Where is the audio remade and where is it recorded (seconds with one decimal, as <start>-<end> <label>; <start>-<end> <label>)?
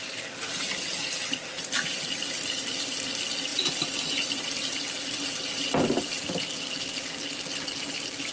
0.0-8.3 recorded